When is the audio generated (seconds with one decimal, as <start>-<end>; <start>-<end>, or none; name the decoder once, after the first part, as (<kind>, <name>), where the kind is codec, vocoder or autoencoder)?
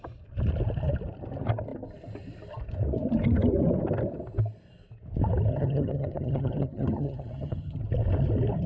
5.5-7.8 (vocoder, HiFi-GAN)